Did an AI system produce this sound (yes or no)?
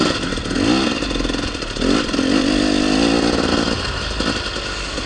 no